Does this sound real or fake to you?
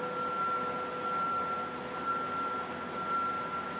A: real